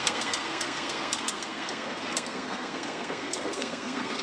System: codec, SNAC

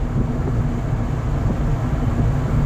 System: none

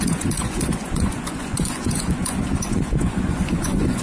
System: vocoder, Vocos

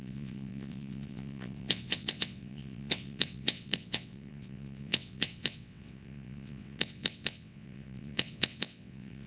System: vocoder, WaveNeXt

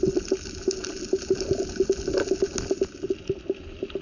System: none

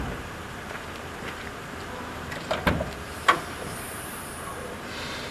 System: vocoder, BigVGAN v2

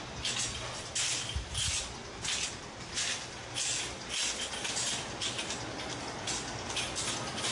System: none